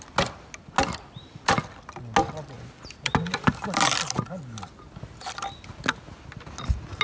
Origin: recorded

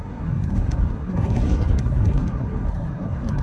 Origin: remade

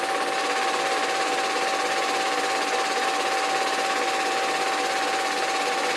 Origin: recorded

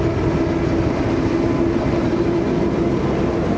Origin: recorded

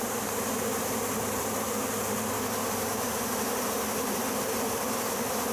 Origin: recorded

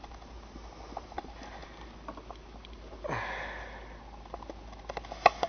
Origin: recorded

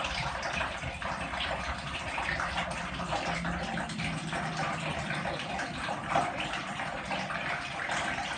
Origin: remade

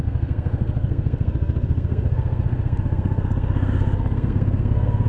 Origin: remade